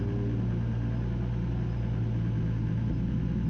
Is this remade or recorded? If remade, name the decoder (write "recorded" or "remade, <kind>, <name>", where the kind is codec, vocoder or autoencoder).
recorded